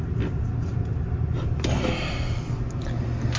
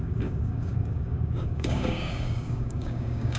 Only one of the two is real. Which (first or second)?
first